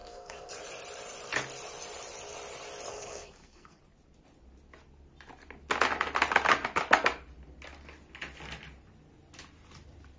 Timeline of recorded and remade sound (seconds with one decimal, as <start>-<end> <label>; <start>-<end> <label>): 0.0-0.5 remade; 0.5-2.9 recorded; 2.9-3.8 remade; 3.8-10.2 recorded